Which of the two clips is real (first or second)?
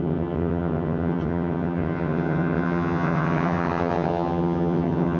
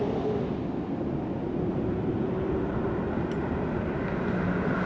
second